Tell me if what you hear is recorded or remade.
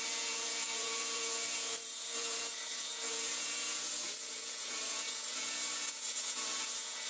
remade